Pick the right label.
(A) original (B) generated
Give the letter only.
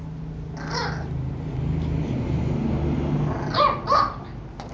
A